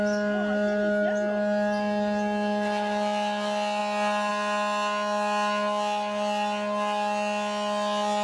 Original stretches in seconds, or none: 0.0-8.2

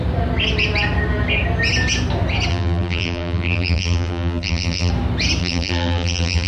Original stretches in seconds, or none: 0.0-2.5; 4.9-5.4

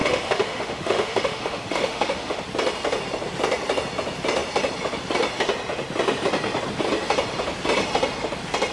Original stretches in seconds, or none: 2.4-8.7